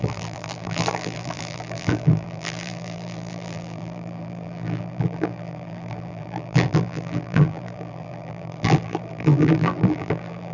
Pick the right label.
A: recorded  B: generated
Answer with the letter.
B